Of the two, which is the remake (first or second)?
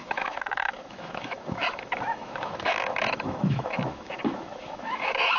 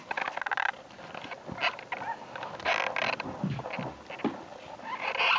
first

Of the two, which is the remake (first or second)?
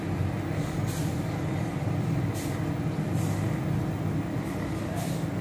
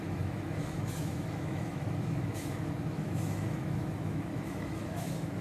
second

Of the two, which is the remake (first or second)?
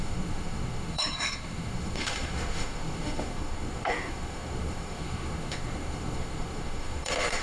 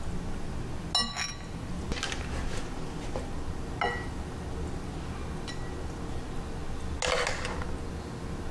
first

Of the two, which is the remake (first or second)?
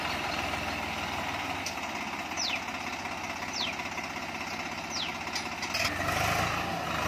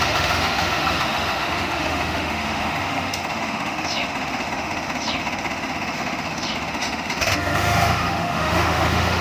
second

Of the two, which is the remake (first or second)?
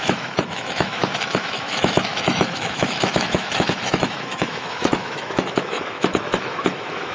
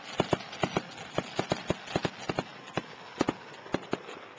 first